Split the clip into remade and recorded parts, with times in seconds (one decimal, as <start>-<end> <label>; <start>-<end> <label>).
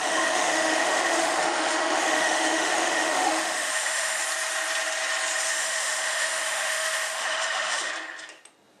0.0-4.2 remade; 4.2-5.5 recorded; 5.5-7.9 remade; 7.9-8.8 recorded